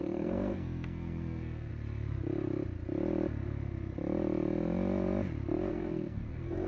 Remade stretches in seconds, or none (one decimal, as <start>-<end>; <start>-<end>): 0.0-1.7; 5.7-6.7